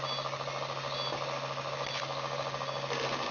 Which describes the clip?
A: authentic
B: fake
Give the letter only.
A